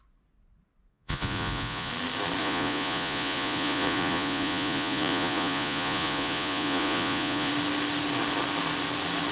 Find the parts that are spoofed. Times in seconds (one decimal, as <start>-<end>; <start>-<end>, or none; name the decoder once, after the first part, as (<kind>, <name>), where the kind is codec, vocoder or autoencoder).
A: 0.9-1.9 (vocoder, Vocos); 2.4-7.5